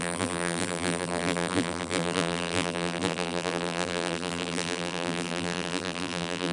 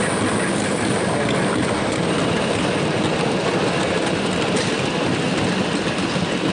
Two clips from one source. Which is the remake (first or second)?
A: first